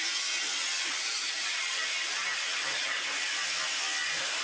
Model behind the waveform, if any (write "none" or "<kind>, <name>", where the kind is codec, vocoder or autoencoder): none